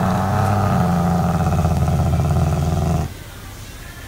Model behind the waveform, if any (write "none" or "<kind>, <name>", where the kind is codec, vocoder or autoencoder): none